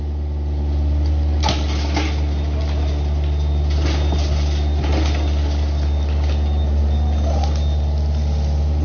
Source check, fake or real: real